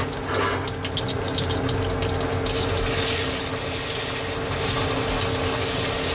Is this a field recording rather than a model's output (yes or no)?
yes